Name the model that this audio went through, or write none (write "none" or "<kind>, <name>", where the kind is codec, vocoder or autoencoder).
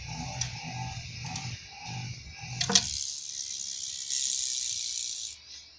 none